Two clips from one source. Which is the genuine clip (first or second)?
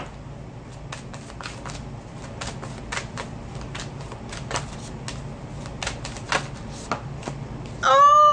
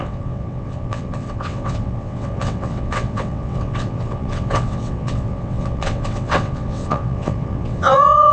first